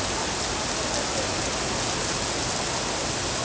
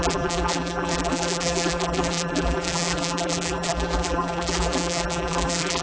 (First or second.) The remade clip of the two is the second